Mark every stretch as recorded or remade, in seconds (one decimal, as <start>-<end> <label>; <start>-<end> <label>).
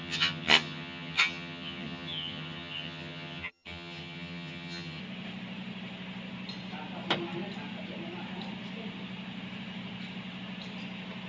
0.0-5.0 remade; 5.0-11.3 recorded